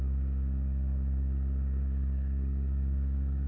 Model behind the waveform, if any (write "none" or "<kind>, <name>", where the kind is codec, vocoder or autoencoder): codec, SNAC